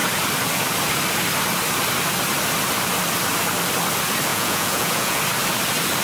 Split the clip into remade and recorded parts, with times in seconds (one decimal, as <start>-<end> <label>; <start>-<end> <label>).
0.0-4.3 recorded; 4.3-5.2 remade; 5.2-6.0 recorded